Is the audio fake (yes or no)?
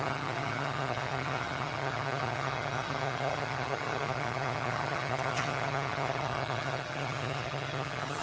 yes